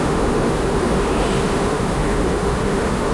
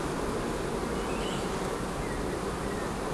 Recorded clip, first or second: second